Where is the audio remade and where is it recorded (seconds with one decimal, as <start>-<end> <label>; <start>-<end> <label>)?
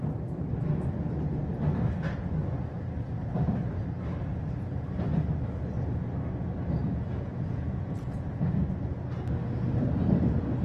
0.0-6.8 recorded; 6.8-8.7 remade; 8.7-10.6 recorded